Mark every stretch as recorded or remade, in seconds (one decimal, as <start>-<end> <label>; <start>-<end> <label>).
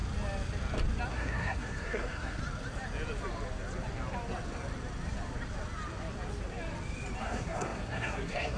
0.0-1.1 recorded; 1.1-2.4 remade; 2.4-7.2 recorded; 7.2-8.6 remade